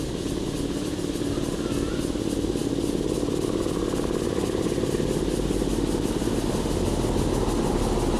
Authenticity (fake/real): real